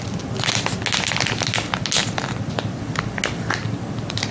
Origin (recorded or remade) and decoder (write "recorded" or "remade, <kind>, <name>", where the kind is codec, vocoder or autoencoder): recorded